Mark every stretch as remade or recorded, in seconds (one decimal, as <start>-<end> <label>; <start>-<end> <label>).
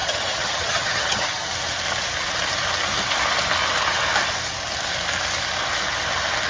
0.0-1.5 remade; 1.5-6.5 recorded